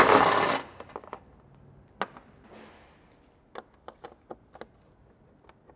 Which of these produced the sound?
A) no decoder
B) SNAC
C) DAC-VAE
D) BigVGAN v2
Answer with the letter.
A